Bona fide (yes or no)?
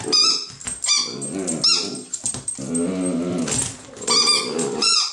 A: yes